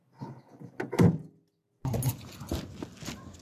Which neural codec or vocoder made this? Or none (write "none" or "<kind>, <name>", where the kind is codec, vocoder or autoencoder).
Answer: none